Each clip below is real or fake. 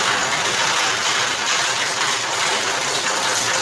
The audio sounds real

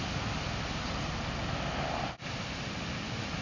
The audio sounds real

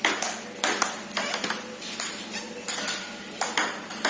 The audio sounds real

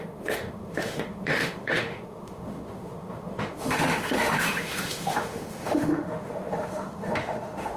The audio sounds fake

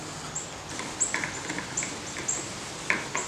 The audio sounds real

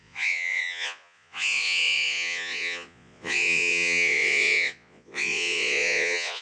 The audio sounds fake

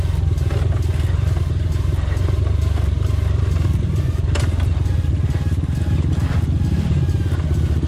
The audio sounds real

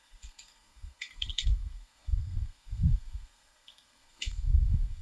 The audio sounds fake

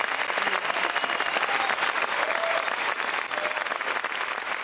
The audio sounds real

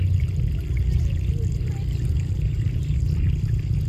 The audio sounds real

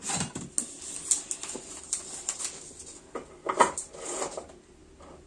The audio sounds real